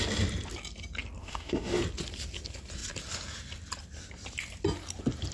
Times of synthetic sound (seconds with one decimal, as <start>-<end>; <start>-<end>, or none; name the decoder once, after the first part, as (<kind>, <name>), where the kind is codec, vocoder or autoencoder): 1.2-1.8 (autoencoder, DAC-VAE)

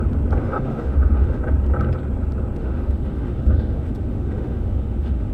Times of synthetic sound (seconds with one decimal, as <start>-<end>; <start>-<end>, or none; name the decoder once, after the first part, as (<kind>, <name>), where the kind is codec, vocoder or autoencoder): 0.4-1.4 (autoencoder, DAC-VAE); 2.6-5.3

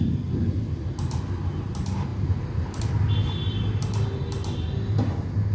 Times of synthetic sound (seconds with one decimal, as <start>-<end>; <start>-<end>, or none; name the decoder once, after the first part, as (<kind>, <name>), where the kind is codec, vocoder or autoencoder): none

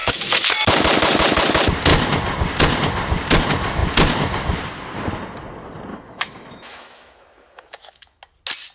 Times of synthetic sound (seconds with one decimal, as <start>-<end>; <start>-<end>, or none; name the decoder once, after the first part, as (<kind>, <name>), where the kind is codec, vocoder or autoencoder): 0.0-0.5 (autoencoder, DAC-VAE); 5.9-8.2

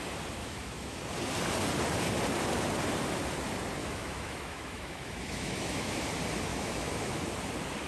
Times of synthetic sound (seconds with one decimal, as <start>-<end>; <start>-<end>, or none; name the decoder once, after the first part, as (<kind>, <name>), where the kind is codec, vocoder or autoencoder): 0.4-1.0 (autoencoder, DAC-VAE); 3.8-6.0; 6.5-7.2

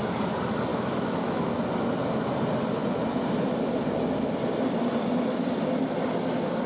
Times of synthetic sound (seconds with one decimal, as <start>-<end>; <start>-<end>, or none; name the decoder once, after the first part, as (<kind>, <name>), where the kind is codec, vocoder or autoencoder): 0.7-1.5 (autoencoder, DAC-VAE)

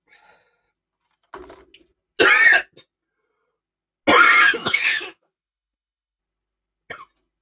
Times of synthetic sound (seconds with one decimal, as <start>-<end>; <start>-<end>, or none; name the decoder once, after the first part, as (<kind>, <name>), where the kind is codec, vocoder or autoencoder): 4.6-6.2 (autoencoder, DAC-VAE)

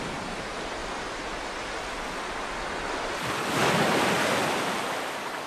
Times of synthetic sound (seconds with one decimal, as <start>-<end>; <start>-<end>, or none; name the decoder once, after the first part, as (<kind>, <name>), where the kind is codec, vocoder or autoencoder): none